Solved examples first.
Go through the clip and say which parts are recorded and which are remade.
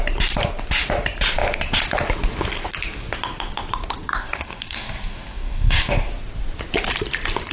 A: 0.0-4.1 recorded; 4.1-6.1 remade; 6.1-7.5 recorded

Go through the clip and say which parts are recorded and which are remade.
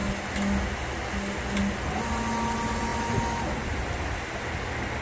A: 0.0-5.0 recorded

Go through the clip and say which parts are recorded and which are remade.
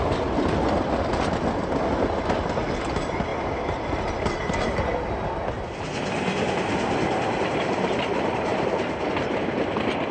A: 0.0-10.1 recorded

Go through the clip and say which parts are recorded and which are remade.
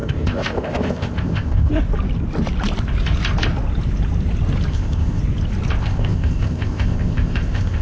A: 0.0-1.7 remade; 1.7-4.7 recorded; 4.7-5.2 remade; 5.2-5.8 recorded; 5.8-7.8 remade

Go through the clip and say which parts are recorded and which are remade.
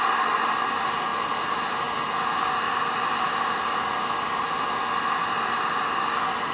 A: 0.0-6.5 recorded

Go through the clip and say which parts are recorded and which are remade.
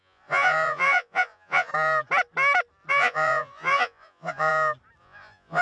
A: 0.0-1.7 remade; 1.7-2.9 recorded; 2.9-4.5 remade; 4.5-5.0 recorded; 5.0-5.6 remade